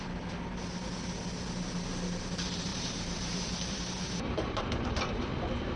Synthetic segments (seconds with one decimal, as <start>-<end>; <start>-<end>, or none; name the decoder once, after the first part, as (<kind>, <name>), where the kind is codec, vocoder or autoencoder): 2.7-5.3 (vocoder, BigVGAN v2)